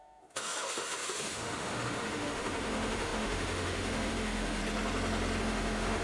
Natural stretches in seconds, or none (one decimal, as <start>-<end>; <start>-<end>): 4.6-5.4

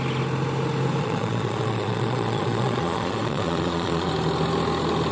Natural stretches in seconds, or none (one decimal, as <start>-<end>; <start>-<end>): 0.0-1.0; 4.1-5.1